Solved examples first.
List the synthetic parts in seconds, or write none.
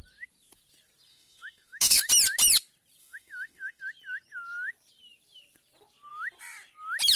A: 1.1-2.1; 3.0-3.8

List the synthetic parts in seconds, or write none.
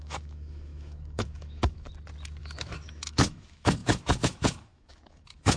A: 0.0-1.9; 2.4-5.6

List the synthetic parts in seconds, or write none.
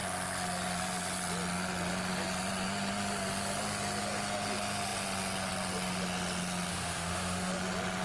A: 6.7-7.5